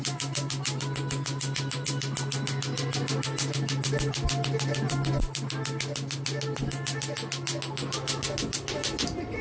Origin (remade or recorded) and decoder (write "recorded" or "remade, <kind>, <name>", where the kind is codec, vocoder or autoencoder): recorded